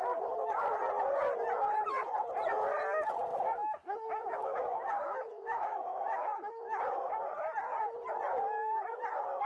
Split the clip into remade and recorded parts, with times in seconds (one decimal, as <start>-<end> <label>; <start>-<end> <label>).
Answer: 0.0-3.3 recorded; 3.3-6.8 remade; 6.8-9.5 recorded